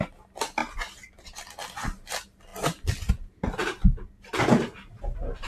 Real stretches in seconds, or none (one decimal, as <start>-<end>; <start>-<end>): 0.0-0.6; 2.1-5.5